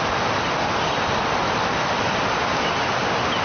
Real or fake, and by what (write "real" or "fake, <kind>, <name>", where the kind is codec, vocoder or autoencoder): real